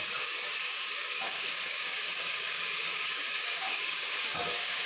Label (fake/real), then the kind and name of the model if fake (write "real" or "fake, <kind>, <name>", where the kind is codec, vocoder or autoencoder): fake, codec, DAC